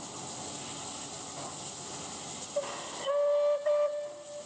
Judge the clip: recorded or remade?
recorded